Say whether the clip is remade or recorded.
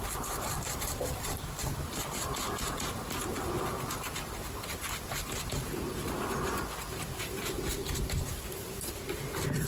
remade